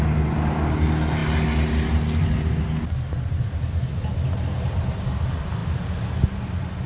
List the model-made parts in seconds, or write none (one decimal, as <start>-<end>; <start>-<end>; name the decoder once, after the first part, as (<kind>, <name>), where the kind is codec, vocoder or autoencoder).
none